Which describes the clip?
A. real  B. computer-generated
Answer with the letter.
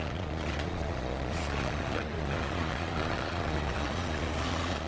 B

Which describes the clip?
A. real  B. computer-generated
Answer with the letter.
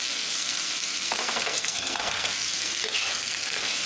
B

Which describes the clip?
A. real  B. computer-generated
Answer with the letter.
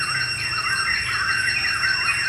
A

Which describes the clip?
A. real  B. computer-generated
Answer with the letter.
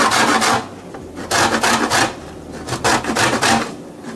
A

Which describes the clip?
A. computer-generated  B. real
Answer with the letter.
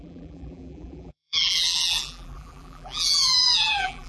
A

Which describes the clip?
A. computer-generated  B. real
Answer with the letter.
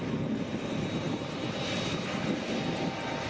B